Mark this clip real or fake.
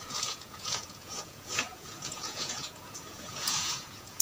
fake